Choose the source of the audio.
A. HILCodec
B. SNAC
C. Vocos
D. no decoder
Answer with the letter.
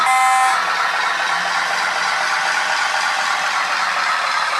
D